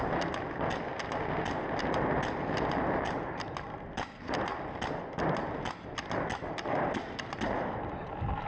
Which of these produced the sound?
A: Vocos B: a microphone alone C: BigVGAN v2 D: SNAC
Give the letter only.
B